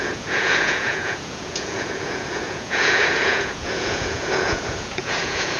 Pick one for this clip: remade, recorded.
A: remade